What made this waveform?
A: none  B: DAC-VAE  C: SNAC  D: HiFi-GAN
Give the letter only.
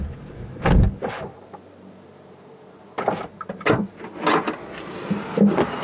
A